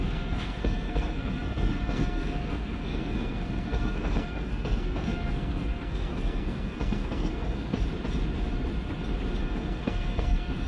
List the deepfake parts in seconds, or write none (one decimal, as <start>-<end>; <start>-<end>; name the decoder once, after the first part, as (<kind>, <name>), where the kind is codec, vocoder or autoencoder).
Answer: 0.0-7.7 (codec, SNAC); 9.4-10.7